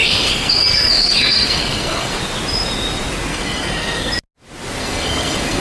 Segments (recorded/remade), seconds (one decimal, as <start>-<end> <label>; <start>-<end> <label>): 0.0-2.2 remade; 2.2-3.3 recorded; 3.3-4.1 remade; 4.1-4.8 recorded; 4.8-5.6 remade